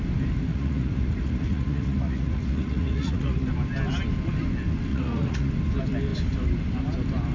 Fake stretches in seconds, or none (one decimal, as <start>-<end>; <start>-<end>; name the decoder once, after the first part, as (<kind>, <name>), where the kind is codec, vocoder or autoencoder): 0.5-3.5 (vocoder, Vocos); 4.9-5.5